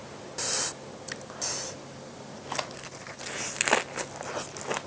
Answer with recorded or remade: recorded